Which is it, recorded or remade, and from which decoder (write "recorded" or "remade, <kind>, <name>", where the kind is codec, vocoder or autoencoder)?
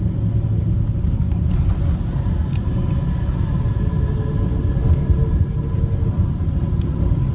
recorded